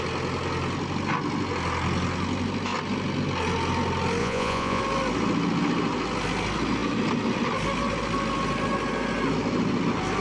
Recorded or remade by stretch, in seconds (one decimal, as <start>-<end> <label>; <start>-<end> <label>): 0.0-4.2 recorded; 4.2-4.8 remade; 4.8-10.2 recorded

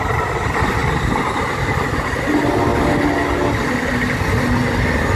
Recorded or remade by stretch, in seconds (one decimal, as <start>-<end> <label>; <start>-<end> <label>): 0.0-5.2 recorded

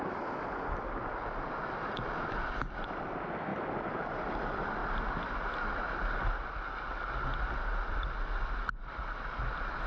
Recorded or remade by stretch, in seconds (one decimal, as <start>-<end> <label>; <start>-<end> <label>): 0.0-9.9 recorded